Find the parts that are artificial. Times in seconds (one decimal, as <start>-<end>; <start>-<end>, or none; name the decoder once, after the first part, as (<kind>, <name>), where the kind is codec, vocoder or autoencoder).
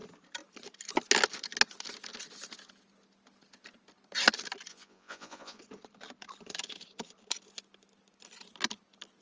4.7-5.6 (vocoder, Vocos)